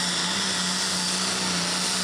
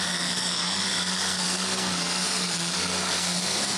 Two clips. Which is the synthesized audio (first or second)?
second